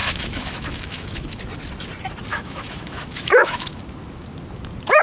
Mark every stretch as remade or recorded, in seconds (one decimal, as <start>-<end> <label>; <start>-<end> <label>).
0.0-1.4 remade; 1.4-2.3 recorded; 2.3-3.8 remade; 3.8-5.0 recorded